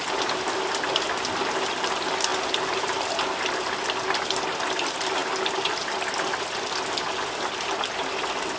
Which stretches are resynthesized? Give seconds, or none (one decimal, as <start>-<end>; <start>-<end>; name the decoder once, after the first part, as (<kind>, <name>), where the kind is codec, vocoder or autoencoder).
none